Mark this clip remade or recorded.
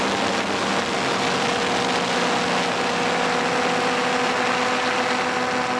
recorded